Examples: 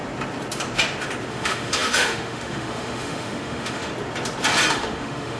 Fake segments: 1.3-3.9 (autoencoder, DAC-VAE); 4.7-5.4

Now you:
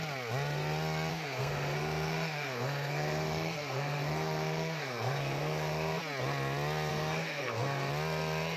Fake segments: 1.1-6.0 (codec, SNAC); 6.9-7.9

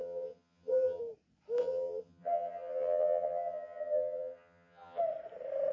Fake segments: 0.0-1.0 (vocoder, HiFi-GAN); 1.6-5.0

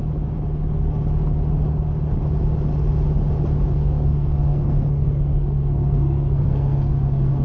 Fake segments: 3.7-7.4 (codec, SNAC)

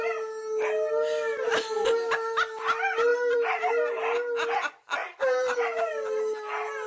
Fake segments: 3.1-3.7 (vocoder, BigVGAN v2); 5.0-5.9